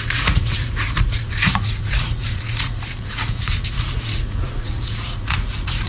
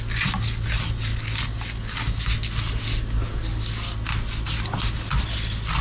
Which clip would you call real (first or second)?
second